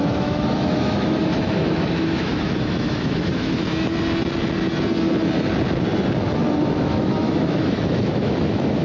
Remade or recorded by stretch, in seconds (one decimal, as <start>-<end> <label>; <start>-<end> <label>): 0.0-3.6 remade; 3.6-6.7 recorded; 6.7-8.8 remade